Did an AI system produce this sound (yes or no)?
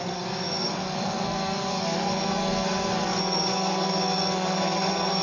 yes